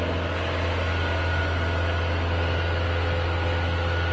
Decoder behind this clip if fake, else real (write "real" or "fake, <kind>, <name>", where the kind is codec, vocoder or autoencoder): real